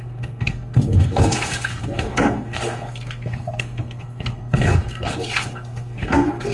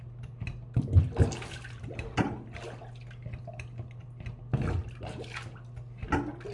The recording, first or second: second